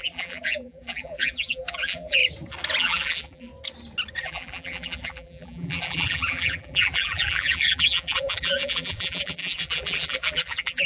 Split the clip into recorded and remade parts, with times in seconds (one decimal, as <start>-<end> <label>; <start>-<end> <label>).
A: 0.0-2.2 remade; 2.2-2.8 recorded; 2.8-3.5 remade; 3.5-4.2 recorded; 4.2-10.9 remade

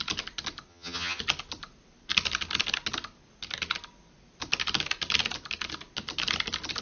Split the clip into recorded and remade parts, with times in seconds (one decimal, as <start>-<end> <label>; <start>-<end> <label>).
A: 0.0-0.7 recorded; 0.7-1.2 remade; 1.2-6.8 recorded

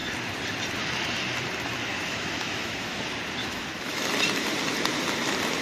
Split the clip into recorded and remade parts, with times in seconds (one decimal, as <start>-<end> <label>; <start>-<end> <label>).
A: 0.0-1.9 recorded; 1.9-3.0 remade; 3.0-3.4 recorded; 3.4-4.1 remade; 4.1-5.6 recorded

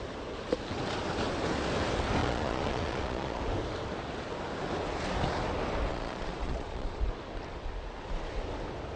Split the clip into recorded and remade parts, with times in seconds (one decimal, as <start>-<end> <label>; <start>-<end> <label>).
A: 0.0-2.2 recorded; 2.2-3.4 remade; 3.4-5.9 recorded; 5.9-7.1 remade; 7.1-9.0 recorded